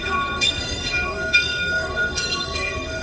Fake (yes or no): yes